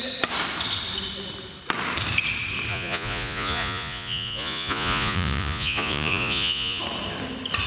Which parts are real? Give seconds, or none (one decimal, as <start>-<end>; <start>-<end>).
0.0-2.7; 6.8-7.7

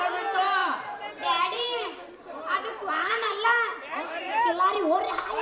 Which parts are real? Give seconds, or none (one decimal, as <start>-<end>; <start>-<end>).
0.0-0.6; 2.1-2.7; 3.3-3.7; 4.3-5.4